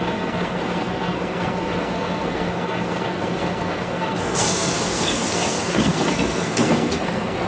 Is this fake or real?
fake